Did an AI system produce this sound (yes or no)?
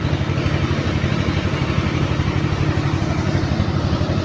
no